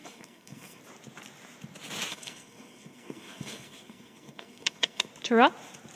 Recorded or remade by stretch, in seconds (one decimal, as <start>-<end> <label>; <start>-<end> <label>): 0.0-0.8 remade; 0.8-2.1 recorded; 2.1-5.1 remade; 5.1-6.0 recorded